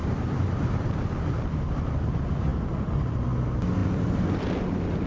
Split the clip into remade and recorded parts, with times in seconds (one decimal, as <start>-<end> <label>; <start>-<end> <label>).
0.0-2.5 recorded; 2.5-3.2 remade; 3.2-3.8 recorded; 3.8-4.6 remade; 4.6-5.1 recorded